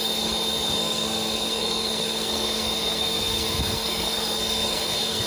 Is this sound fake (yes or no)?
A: yes